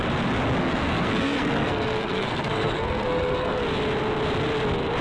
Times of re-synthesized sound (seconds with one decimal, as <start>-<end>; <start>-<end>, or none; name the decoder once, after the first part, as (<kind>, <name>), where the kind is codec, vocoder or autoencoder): 0.6-3.6 (codec, SNAC)